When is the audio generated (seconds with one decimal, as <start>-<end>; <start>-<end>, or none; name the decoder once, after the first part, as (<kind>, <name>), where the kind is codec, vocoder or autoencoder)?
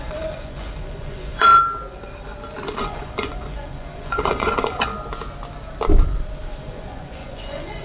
0.0-1.5 (vocoder, Vocos); 2.8-4.9; 6.6-7.8